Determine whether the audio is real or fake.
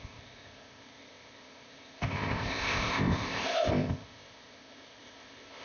fake